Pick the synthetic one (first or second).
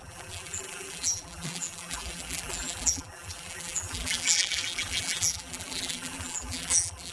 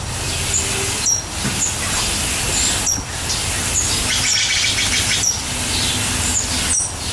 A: first